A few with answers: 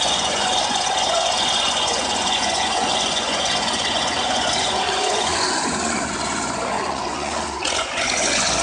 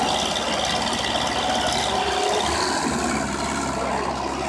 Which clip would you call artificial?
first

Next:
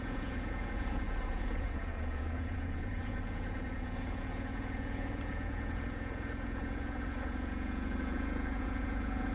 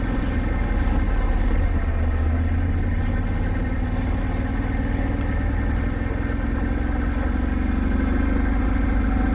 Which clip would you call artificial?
first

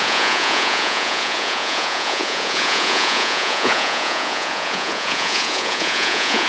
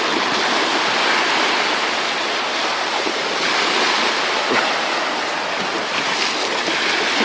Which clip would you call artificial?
first